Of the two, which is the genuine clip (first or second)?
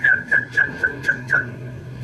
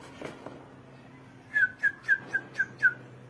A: second